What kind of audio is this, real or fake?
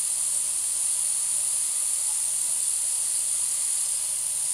real